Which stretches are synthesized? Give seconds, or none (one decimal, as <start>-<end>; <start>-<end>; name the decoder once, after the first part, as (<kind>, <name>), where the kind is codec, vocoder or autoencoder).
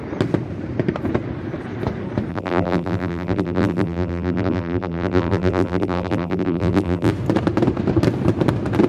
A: 2.3-7.1 (vocoder, BigVGAN v2)